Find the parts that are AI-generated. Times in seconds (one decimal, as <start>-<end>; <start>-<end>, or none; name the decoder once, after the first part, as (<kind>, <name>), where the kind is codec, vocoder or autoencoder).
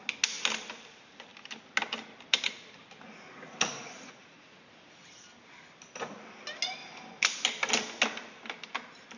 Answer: 3.5-4.7 (vocoder, Vocos)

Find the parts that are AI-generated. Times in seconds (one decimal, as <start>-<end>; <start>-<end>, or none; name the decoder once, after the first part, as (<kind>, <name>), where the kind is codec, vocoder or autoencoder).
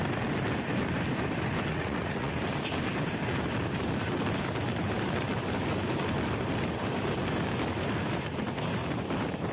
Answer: 1.7-2.3 (vocoder, Vocos)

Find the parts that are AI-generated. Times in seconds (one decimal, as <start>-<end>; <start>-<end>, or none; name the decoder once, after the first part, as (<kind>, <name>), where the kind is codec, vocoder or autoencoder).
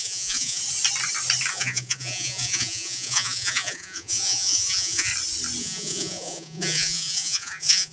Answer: 0.0-0.6 (vocoder, Vocos); 1.5-5.1; 5.6-7.9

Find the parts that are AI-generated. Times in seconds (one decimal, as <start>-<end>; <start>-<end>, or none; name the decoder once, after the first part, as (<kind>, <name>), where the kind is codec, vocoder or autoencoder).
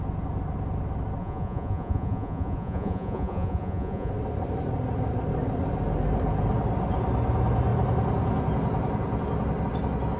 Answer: 1.2-4.1 (vocoder, Vocos)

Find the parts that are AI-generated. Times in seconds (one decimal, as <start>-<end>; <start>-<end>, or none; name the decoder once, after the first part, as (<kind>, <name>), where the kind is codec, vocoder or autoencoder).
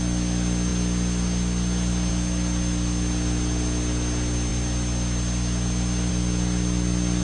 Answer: none